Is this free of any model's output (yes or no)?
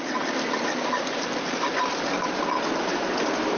yes